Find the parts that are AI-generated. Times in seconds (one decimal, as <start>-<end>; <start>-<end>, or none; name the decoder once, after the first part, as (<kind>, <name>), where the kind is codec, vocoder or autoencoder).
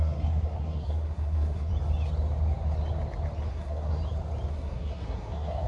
0.0-1.7 (codec, SNAC); 3.5-4.0; 4.5-5.7